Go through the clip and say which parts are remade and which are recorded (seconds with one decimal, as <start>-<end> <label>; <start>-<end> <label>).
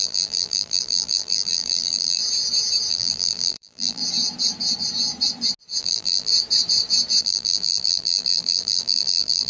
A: 0.0-2.2 remade; 2.2-2.9 recorded; 2.9-4.0 remade; 4.0-5.8 recorded; 5.8-6.3 remade; 6.3-7.2 recorded; 7.2-9.5 remade